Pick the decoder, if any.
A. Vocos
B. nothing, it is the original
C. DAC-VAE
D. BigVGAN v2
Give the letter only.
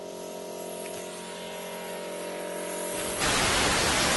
B